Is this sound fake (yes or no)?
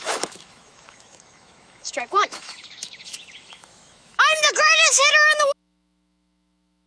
yes